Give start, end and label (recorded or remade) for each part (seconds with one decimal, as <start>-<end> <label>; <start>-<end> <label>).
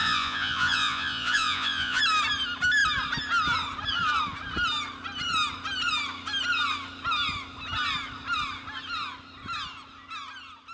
0.0-2.0 remade; 2.0-10.7 recorded